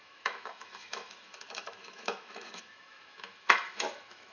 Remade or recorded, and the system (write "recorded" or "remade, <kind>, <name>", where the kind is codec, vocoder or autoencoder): remade, autoencoder, DAC-VAE